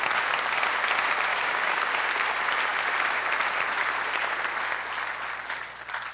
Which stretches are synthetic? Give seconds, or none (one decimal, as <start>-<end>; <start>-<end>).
1.3-2.0